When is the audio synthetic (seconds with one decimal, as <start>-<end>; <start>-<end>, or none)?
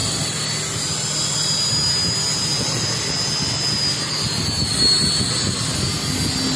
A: none